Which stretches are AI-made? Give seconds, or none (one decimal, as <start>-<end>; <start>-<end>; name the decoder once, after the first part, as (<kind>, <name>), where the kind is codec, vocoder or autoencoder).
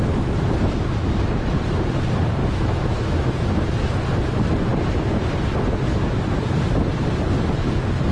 2.4-3.3 (autoencoder, DAC-VAE)